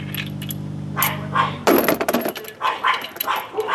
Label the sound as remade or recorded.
recorded